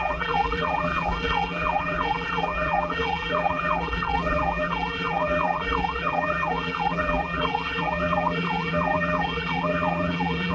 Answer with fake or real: fake